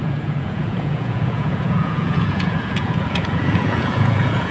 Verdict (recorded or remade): remade